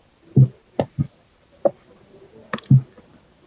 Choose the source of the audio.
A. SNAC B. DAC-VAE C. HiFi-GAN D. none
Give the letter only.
D